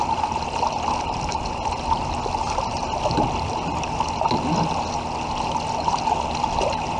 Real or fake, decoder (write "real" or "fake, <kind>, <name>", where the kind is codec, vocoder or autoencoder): real